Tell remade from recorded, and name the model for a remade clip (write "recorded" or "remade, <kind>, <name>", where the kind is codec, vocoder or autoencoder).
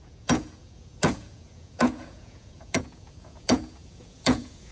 remade, vocoder, Vocos